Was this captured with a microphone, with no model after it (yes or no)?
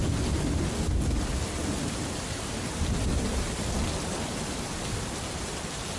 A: yes